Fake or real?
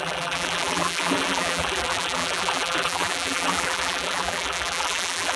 fake